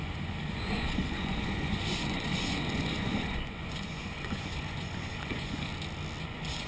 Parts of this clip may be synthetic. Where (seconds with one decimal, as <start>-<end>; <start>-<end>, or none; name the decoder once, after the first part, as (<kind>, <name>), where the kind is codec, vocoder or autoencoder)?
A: 0.0-5.7 (vocoder, Vocos); 6.2-6.7